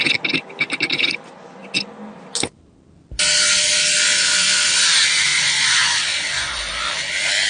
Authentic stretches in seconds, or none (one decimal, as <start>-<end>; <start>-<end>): 0.0-5.3; 6.7-7.5